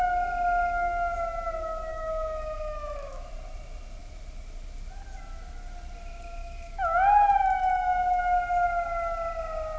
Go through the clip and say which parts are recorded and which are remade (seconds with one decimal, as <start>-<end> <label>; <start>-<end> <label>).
0.0-1.9 recorded; 1.9-3.3 remade; 3.3-6.4 recorded; 6.4-8.2 remade; 8.2-9.8 recorded